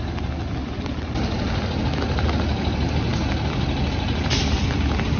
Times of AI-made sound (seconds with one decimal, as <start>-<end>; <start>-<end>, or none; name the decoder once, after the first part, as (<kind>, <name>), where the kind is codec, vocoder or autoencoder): none